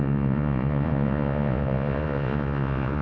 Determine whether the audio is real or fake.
fake